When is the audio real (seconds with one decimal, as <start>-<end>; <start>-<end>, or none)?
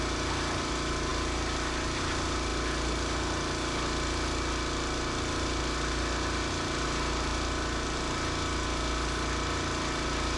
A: 0.0-10.4